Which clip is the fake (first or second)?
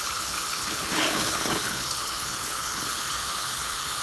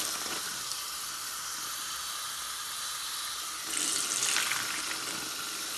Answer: first